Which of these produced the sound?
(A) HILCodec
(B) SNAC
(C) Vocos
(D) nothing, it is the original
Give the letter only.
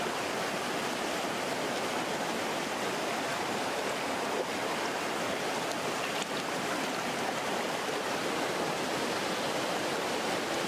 D